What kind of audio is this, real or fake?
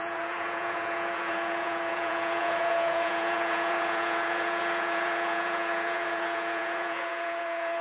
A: fake